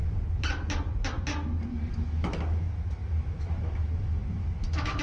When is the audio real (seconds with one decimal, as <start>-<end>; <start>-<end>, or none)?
0.0-1.7